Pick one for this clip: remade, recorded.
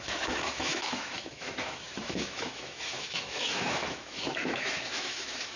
remade